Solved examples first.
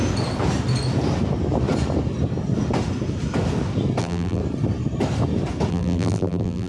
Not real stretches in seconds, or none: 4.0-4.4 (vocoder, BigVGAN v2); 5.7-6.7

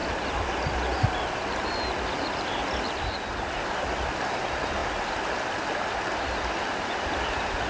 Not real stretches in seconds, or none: none

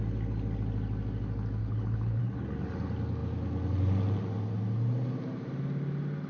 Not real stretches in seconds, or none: 1.6-2.2 (codec, HILCodec)

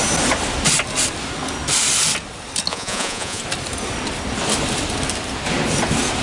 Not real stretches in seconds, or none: 2.7-3.4 (vocoder, Vocos)